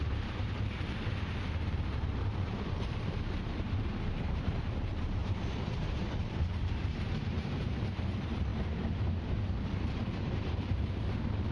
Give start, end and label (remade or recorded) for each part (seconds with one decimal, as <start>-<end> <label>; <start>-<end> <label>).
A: 0.0-8.5 remade; 8.5-9.0 recorded; 9.0-11.5 remade